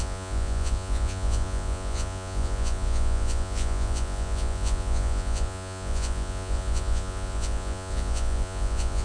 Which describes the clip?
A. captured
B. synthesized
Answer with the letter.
B